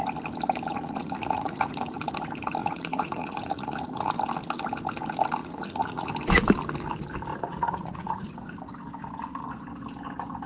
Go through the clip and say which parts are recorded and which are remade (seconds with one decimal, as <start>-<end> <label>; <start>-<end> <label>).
0.0-0.7 recorded; 0.7-2.1 remade; 2.1-2.6 recorded; 2.6-4.1 remade; 4.1-5.4 recorded; 5.4-6.1 remade; 6.1-7.3 recorded; 7.3-8.6 remade; 8.6-10.5 recorded